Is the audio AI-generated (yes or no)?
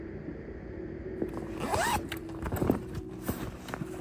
no